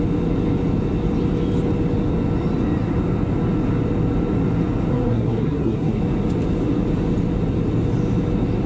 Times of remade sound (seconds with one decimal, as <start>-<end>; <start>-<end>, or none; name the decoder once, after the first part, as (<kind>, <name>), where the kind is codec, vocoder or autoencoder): 4.9-6.0 (codec, SNAC)